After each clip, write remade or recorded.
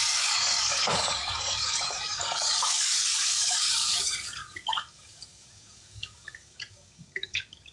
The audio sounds remade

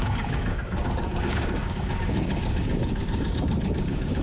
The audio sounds remade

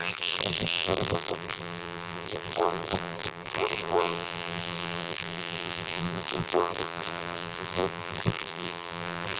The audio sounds remade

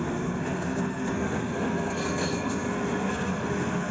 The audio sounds remade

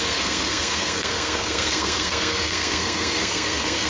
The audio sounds remade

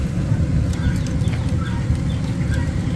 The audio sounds recorded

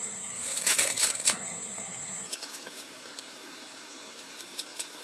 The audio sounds remade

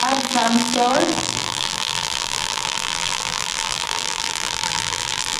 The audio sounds remade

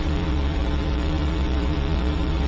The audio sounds remade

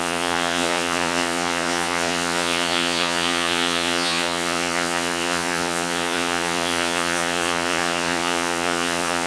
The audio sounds remade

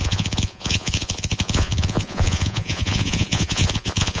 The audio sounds remade